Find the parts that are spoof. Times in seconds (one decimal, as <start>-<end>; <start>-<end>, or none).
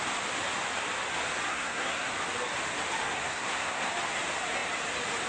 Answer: 1.5-2.1; 3.0-3.9